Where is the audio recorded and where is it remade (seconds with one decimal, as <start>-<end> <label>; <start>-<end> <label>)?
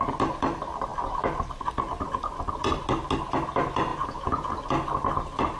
0.0-3.9 recorded; 3.9-4.5 remade; 4.5-5.6 recorded